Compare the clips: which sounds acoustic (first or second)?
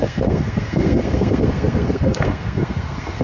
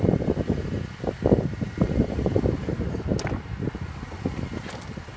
second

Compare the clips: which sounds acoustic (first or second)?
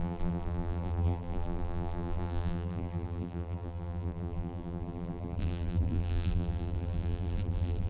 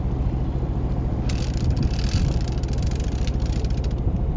second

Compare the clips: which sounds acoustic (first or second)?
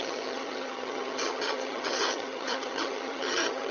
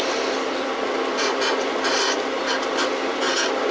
second